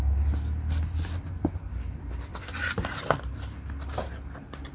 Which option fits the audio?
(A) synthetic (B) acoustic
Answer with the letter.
B